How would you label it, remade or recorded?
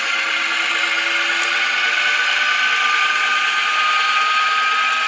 recorded